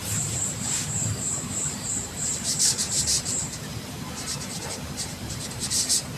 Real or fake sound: fake